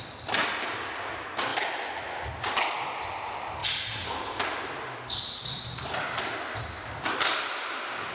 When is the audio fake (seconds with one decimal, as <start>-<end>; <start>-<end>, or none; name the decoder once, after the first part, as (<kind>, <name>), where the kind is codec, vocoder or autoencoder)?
none